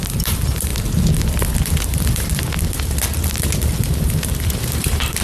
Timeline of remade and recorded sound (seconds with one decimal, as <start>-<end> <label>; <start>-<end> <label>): 0.0-0.7 remade; 0.7-3.8 recorded; 3.8-5.2 remade

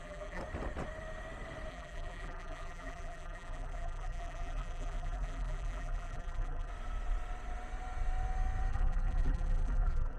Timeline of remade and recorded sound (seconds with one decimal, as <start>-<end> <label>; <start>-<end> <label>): 0.0-0.4 remade; 0.4-1.7 recorded; 1.7-6.7 remade; 6.7-8.7 recorded; 8.7-10.2 remade

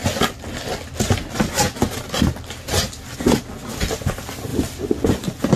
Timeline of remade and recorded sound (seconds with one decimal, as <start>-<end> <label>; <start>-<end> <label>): 0.0-5.6 recorded